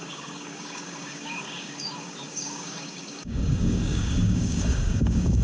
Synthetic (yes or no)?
yes